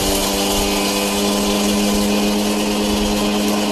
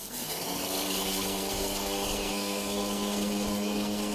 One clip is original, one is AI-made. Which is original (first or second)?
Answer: first